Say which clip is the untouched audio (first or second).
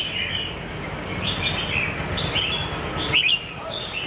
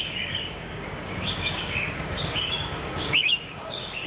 first